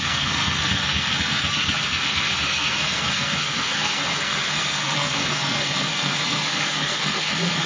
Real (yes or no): no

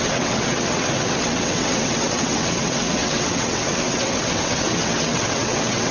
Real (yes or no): no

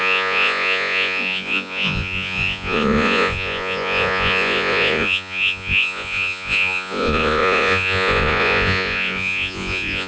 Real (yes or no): no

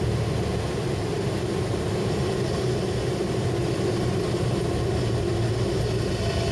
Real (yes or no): yes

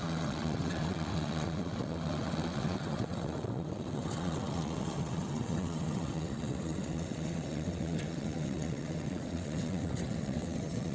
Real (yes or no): no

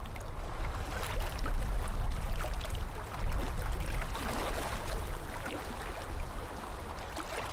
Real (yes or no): yes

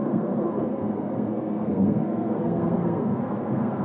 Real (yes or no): no